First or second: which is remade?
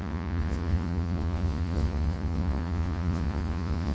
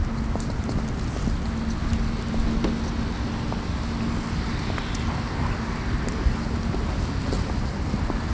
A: first